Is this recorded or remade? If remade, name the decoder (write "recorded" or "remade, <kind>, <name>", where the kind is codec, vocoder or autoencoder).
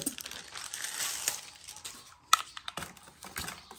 recorded